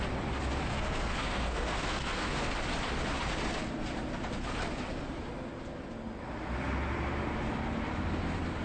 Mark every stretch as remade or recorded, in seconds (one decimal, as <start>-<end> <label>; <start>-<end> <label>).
0.0-0.7 recorded; 0.7-2.5 remade; 2.5-8.6 recorded